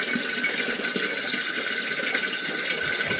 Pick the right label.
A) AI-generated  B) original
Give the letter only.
B